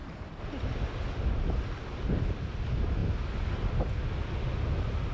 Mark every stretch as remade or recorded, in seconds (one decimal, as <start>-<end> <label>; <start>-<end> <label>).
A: 0.0-5.1 recorded

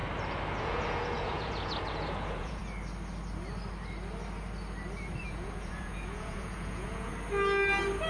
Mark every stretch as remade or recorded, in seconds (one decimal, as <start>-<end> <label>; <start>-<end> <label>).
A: 0.0-0.6 recorded; 0.6-2.6 remade; 2.6-5.2 recorded; 5.2-7.1 remade; 7.1-8.1 recorded

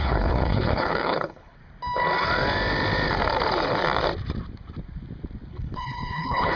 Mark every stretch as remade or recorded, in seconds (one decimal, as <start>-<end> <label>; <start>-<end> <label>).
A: 0.0-1.6 remade; 1.6-5.5 recorded; 5.5-6.6 remade

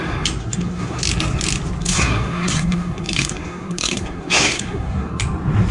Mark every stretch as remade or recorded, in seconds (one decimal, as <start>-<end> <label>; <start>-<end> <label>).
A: 0.0-0.4 recorded; 0.4-1.0 remade; 1.0-1.8 recorded; 1.8-5.2 remade; 5.2-5.7 recorded

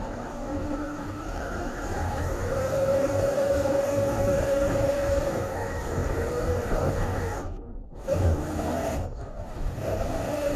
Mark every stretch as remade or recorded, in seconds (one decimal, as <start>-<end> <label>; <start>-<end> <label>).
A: 0.0-10.6 remade

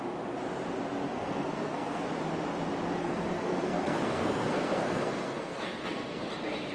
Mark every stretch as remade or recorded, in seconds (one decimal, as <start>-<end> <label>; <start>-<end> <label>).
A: 0.0-1.1 recorded; 1.1-2.0 remade; 2.0-3.0 recorded; 3.0-6.2 remade; 6.2-6.7 recorded

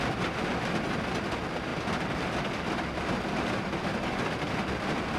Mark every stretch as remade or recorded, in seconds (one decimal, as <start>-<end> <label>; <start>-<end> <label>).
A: 0.0-5.2 recorded

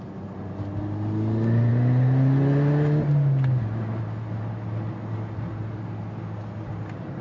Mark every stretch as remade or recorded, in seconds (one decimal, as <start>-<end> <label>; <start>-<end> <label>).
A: 0.0-7.2 recorded